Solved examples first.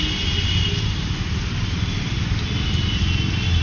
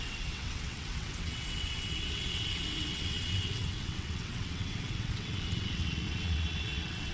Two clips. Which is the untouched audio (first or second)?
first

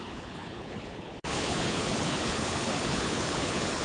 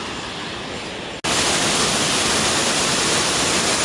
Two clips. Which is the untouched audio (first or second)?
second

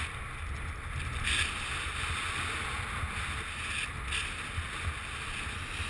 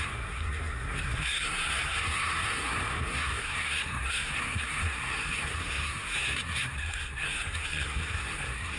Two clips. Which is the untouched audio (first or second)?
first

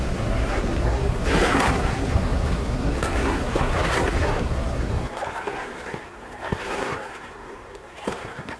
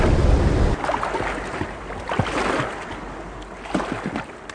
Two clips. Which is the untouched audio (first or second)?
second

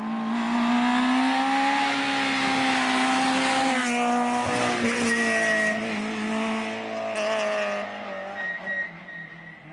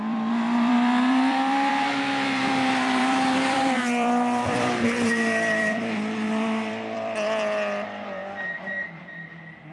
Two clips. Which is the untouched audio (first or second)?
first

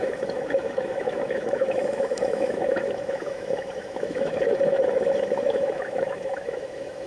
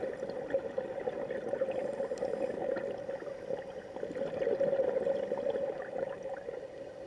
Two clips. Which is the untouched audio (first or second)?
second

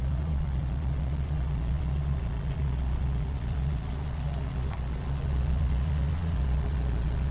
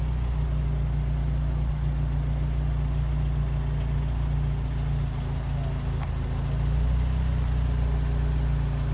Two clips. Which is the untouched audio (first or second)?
second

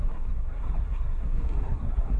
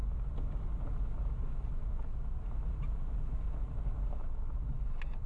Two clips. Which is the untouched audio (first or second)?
second